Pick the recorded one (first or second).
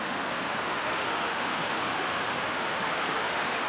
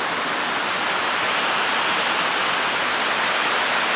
second